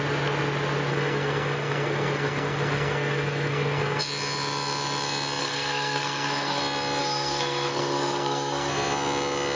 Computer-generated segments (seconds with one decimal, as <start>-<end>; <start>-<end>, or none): 0.9-4.0; 5.4-6.6; 7.0-8.7

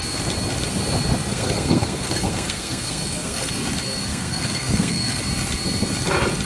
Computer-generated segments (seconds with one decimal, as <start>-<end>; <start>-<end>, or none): 1.3-3.5; 4.1-5.2

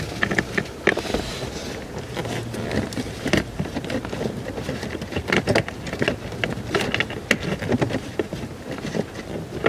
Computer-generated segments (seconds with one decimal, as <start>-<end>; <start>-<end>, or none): none

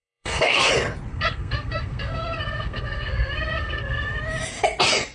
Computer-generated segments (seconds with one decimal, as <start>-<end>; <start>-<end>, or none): 0.0-0.7; 1.1-4.2

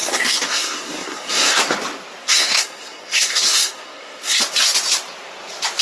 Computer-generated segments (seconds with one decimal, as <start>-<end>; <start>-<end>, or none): 0.0-1.6; 2.2-4.4

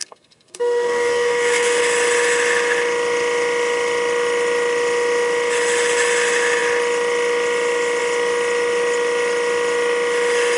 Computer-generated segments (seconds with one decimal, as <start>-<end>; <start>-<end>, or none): 0.0-1.8

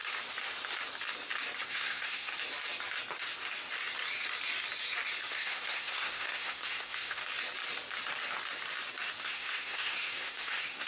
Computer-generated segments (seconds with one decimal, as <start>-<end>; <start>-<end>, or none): 1.6-2.3; 5.3-7.2; 9.2-10.9

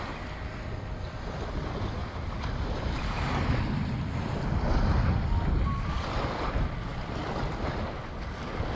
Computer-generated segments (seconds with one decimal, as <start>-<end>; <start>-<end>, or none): none